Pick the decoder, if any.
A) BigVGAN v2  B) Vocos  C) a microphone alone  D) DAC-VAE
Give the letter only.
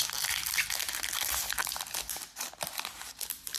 C